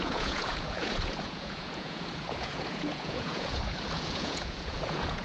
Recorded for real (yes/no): no